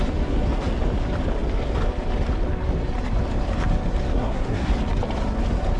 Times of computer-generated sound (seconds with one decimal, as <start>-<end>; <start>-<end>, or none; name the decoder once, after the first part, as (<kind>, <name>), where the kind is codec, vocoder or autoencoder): 4.1-4.7 (codec, SNAC)